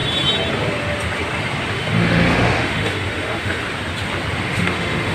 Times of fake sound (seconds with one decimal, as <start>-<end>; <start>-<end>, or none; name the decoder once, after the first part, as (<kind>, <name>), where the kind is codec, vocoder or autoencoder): 1.7-3.6 (autoencoder, DAC-VAE); 4.4-5.1